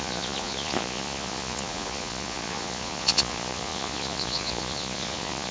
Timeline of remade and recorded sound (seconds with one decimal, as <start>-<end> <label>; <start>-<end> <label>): 0.0-5.5 remade